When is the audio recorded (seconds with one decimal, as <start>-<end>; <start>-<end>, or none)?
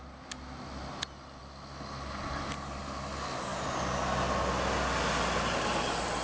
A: 0.0-6.2